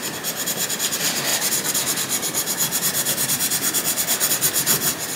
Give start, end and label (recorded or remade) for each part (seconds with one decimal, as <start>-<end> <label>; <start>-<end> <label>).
0.0-5.2 recorded